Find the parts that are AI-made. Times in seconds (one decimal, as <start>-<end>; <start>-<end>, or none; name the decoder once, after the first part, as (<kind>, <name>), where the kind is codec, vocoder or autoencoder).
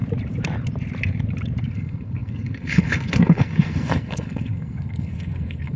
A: 1.6-5.8 (codec, SNAC)